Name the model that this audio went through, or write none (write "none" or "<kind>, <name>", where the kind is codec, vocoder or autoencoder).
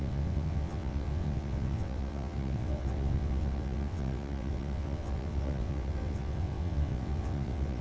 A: vocoder, WaveNeXt